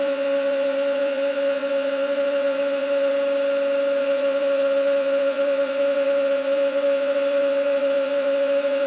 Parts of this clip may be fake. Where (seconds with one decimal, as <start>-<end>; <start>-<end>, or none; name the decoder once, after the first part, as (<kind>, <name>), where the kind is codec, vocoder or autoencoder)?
0.0-3.1 (vocoder, WaveNeXt); 4.0-8.9

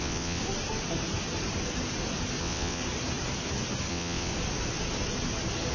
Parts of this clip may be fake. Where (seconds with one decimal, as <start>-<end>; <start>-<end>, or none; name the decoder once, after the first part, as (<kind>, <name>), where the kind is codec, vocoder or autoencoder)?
0.0-0.4 (vocoder, WaveNeXt); 2.4-2.8; 3.9-4.3

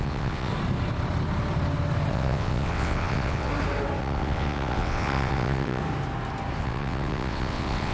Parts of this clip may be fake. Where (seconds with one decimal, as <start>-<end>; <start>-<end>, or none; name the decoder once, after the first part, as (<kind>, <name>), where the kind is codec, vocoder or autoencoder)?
0.0-0.5 (vocoder, WaveNeXt); 2.1-3.5; 4.0-5.8; 6.6-7.9

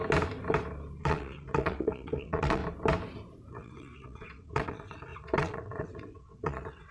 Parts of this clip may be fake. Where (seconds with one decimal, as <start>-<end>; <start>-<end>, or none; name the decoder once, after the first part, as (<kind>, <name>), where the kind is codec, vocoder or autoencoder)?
1.0-2.6 (vocoder, WaveNeXt); 3.5-6.9

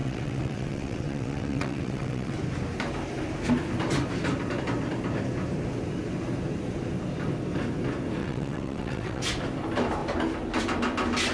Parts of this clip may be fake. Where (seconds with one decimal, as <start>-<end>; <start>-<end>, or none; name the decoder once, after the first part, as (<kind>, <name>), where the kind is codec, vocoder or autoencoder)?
0.0-2.4 (vocoder, WaveNeXt); 8.2-9.2

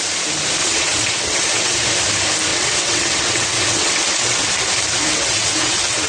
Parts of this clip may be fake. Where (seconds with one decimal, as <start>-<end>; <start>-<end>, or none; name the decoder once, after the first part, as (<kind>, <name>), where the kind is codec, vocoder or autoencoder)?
0.6-1.7 (vocoder, WaveNeXt); 2.5-4.5; 5.1-6.1